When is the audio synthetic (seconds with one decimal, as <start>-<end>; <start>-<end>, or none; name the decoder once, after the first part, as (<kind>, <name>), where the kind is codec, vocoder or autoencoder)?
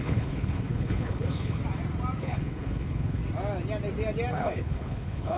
0.0-1.6 (codec, HILCodec); 2.2-3.2; 4.3-5.4